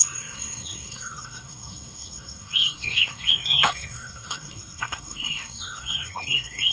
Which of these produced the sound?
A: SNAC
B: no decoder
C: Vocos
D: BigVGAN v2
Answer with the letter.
A